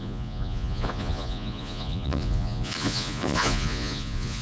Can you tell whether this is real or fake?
fake